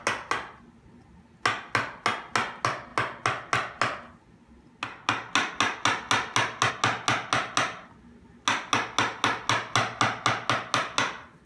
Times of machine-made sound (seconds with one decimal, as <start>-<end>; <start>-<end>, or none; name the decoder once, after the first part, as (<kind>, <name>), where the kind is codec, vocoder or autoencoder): none